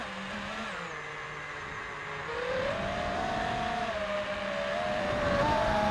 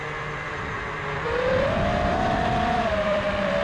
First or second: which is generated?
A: second